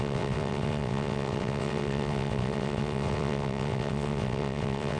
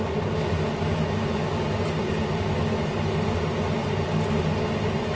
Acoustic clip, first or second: second